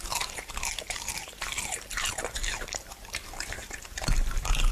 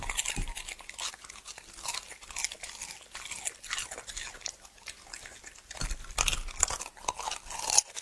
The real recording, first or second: second